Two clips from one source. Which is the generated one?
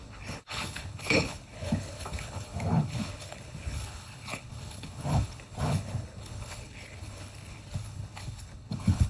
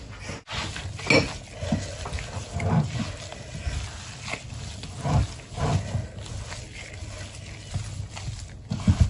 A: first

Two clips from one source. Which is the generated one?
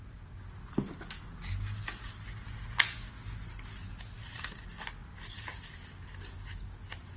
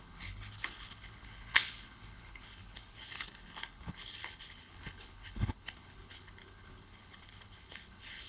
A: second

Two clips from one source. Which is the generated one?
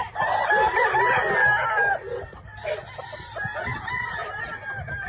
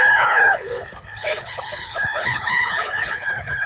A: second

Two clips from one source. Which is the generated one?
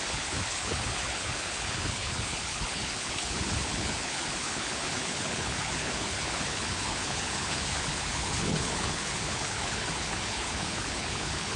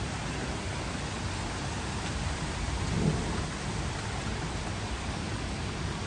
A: first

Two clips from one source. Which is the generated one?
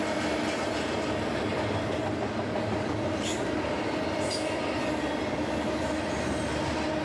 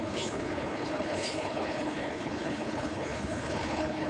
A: second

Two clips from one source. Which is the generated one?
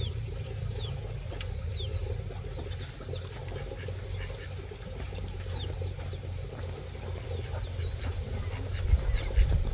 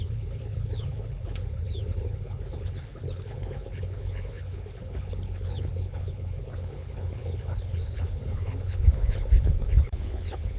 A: second